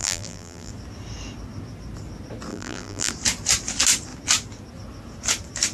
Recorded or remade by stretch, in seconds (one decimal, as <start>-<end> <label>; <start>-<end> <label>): 0.0-0.7 remade; 0.7-2.5 recorded; 2.5-3.1 remade; 3.1-5.7 recorded